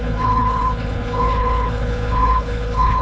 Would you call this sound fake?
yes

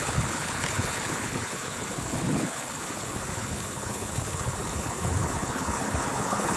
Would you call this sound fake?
yes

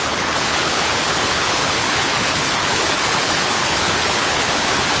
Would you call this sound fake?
yes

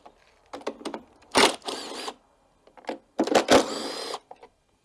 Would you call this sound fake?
no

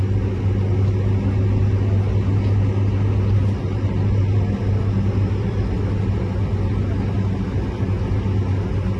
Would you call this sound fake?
no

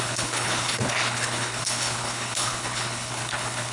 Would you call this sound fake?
yes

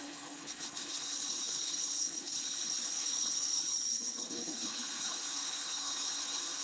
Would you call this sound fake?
yes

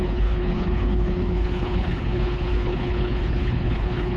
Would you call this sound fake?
yes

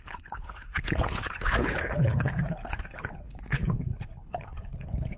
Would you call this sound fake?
yes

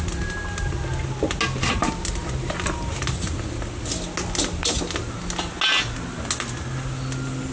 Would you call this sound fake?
no